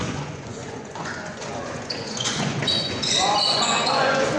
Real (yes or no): no